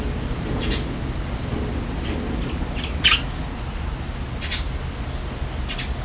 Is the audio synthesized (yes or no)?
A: no